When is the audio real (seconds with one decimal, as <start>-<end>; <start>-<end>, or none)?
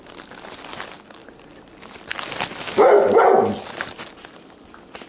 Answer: 0.0-5.1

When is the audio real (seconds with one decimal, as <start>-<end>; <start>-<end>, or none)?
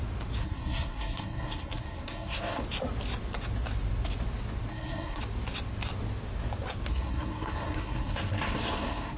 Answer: 0.0-0.4; 2.6-4.7; 5.2-6.9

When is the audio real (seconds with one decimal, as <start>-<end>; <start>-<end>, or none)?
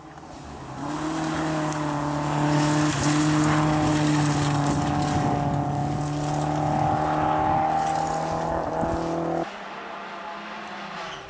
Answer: 0.0-11.3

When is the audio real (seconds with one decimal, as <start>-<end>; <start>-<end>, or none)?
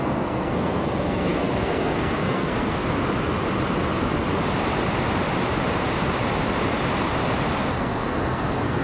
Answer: 2.8-7.7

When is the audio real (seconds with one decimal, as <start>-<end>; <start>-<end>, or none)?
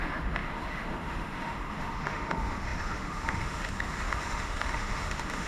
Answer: none